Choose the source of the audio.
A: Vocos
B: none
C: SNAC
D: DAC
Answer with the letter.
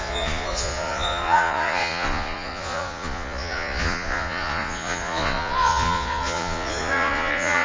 A